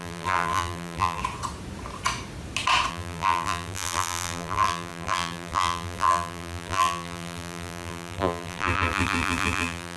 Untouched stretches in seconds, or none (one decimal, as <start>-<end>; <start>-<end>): 1.2-2.9